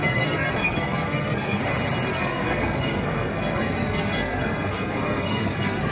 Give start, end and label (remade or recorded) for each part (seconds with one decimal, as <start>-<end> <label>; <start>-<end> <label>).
0.0-1.6 remade; 1.6-2.1 recorded; 2.1-5.9 remade